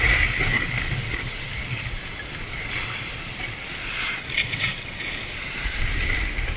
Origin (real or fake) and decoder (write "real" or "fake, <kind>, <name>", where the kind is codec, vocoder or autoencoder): real